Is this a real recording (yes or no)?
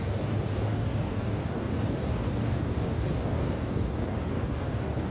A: no